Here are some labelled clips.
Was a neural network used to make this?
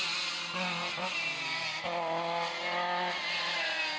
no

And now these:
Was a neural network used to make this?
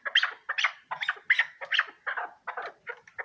no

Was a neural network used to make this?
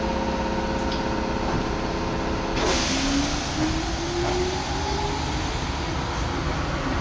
no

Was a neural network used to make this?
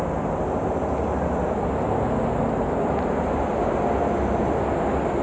no